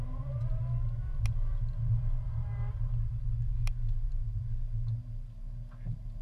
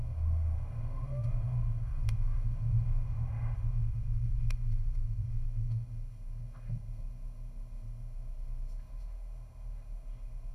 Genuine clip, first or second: first